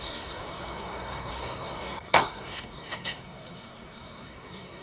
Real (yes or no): no